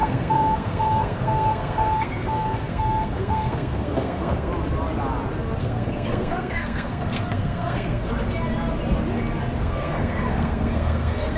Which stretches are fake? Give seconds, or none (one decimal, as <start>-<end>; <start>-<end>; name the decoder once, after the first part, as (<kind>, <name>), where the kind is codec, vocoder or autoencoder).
0.0-4.5 (codec, SNAC); 5.6-8.1; 9.6-11.4